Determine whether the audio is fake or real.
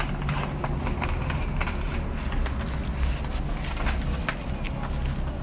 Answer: real